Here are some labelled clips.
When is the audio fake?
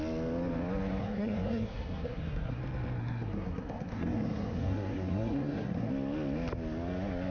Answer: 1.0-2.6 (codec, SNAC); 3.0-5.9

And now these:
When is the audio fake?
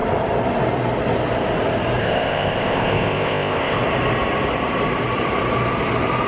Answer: 2.0-3.8 (codec, ZipCodec)